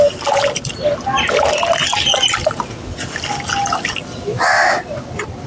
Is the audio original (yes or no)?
yes